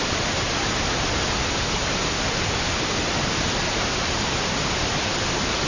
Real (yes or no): yes